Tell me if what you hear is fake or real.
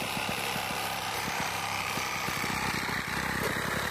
fake